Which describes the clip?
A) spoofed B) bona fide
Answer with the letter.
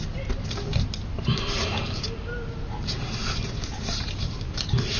B